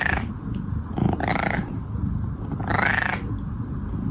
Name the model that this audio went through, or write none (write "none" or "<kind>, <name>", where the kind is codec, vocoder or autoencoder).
none